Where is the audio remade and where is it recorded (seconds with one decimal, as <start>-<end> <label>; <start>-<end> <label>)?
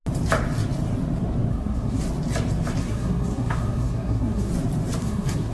0.0-1.5 recorded; 1.5-2.0 remade; 2.0-2.8 recorded; 2.8-4.5 remade; 4.5-5.0 recorded; 5.0-5.5 remade